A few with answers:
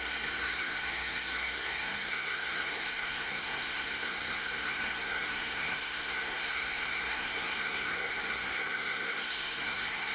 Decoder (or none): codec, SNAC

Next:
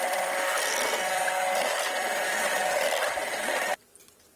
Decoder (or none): none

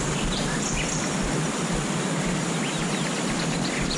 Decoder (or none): vocoder, BigVGAN v2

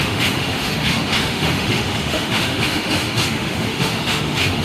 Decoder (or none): autoencoder, DAC-VAE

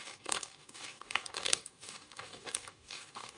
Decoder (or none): codec, DAC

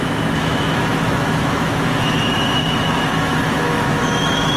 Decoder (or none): autoencoder, DAC-VAE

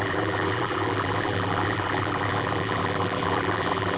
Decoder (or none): vocoder, BigVGAN v2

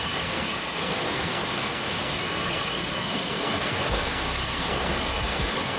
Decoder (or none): codec, SNAC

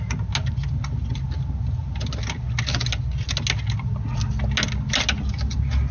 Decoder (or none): none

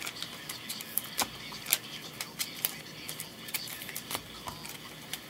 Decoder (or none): none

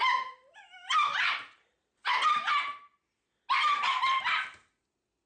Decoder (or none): none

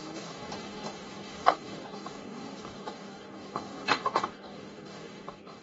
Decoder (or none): codec, DAC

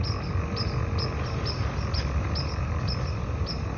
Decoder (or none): none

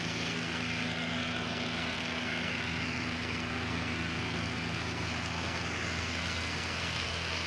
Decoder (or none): codec, SNAC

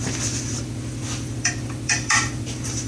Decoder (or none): vocoder, BigVGAN v2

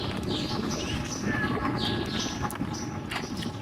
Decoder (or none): none